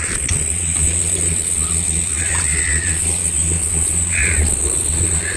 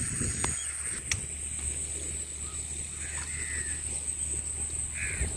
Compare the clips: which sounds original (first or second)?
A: second